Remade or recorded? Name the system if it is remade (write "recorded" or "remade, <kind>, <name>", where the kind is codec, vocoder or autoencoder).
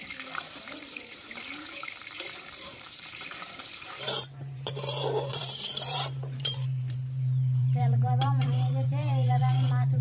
remade, vocoder, BigVGAN v2